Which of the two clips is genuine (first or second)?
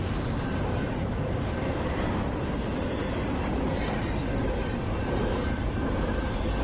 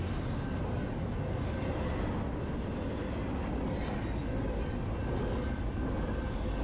second